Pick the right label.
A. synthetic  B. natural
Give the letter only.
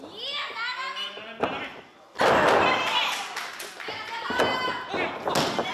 B